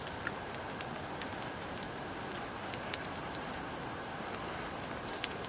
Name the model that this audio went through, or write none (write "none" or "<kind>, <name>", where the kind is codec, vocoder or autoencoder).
none